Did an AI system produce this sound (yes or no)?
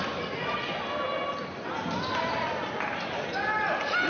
no